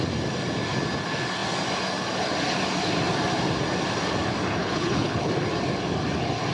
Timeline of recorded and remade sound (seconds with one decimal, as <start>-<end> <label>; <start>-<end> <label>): 0.0-4.6 recorded; 4.6-5.3 remade; 5.3-6.5 recorded